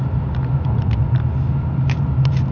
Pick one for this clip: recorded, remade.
recorded